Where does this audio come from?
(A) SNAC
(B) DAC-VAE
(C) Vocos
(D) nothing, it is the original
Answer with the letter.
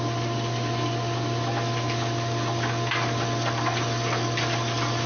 D